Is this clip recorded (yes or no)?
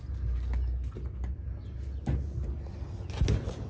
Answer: yes